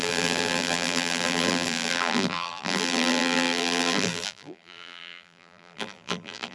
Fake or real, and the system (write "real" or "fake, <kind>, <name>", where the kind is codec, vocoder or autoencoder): fake, vocoder, BigVGAN v2